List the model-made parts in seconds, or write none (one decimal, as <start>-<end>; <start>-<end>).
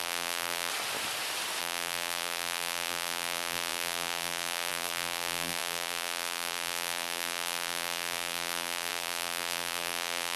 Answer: 0.0-0.7; 1.6-10.4